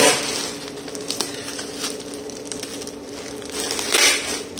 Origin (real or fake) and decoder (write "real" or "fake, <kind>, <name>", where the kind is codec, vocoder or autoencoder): real